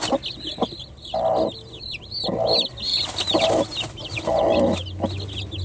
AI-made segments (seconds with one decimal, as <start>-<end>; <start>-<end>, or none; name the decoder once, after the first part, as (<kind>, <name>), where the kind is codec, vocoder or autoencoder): none